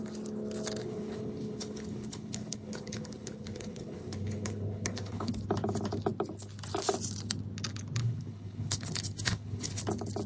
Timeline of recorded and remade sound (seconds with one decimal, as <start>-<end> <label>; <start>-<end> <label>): 0.0-0.8 recorded; 0.8-5.3 remade; 5.3-8.0 recorded; 8.0-9.8 remade; 9.8-10.3 recorded